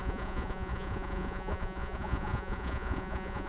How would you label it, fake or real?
fake